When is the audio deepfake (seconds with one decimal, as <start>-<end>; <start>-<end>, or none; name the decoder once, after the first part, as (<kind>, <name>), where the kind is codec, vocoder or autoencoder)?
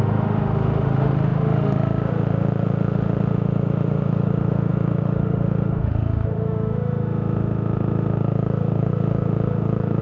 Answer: 0.0-10.0 (autoencoder, DAC-VAE)